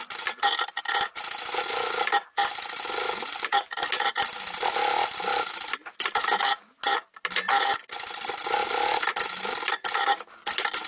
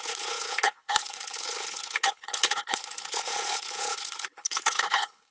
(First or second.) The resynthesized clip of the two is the second